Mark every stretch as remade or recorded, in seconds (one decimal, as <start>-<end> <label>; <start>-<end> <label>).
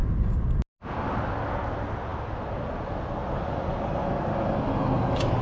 0.0-0.6 remade; 0.6-5.4 recorded